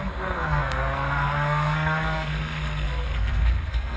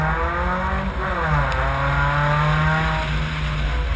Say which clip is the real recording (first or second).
second